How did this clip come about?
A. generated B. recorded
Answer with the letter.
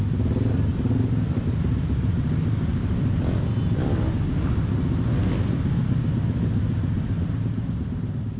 B